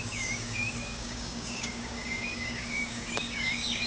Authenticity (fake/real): fake